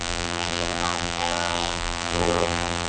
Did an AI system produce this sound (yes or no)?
yes